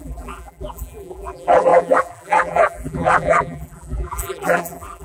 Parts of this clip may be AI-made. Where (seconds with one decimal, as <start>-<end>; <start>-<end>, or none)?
0.0-5.0